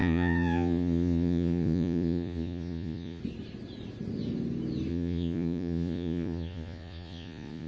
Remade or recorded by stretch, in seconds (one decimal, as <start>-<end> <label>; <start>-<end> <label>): 0.0-3.2 remade; 3.2-4.9 recorded; 4.9-7.7 remade